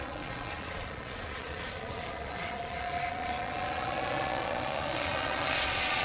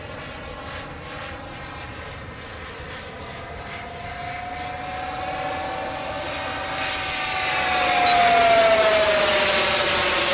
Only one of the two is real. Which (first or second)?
second